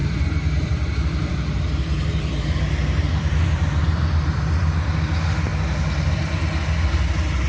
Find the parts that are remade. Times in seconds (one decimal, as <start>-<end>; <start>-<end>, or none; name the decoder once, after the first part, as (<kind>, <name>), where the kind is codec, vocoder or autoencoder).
0.0-2.6 (vocoder, BigVGAN v2); 3.3-4.6